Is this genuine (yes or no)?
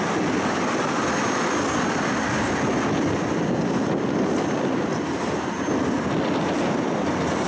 yes